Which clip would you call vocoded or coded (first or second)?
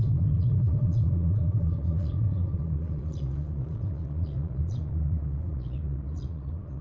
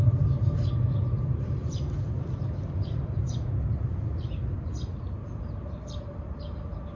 first